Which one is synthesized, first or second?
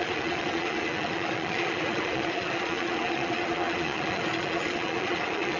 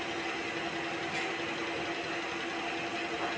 first